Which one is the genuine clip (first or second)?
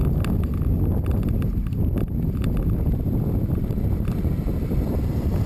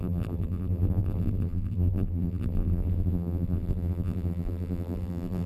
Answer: first